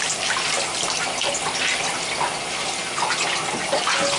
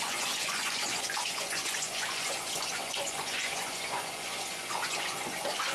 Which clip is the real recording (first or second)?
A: first